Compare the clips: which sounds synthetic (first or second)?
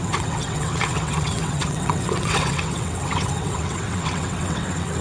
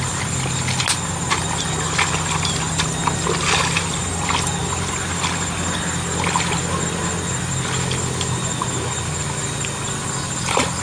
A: first